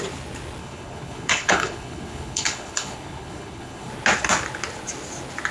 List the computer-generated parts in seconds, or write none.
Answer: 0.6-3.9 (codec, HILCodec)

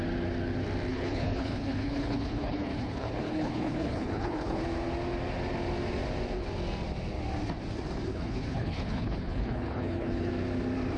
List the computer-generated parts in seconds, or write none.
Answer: 0.9-4.6 (codec, HILCodec); 8.1-10.3

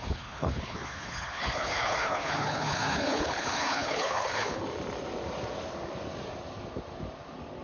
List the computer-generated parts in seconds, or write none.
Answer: 0.0-4.6 (codec, HILCodec)

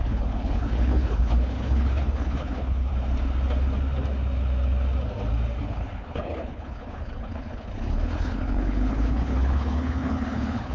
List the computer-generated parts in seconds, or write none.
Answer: 0.0-2.9 (codec, HILCodec); 5.6-10.7

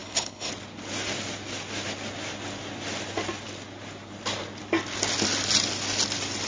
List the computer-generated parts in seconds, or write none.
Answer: 0.0-0.5 (codec, HILCodec)

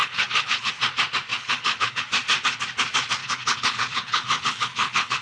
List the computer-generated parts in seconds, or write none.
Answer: 0.0-0.7 (codec, HILCodec); 1.3-2.0; 3.2-5.2

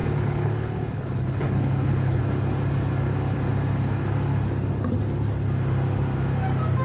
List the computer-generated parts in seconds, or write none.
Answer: 0.0-2.2 (codec, HILCodec)